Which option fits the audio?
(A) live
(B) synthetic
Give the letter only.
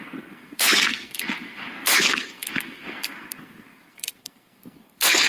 B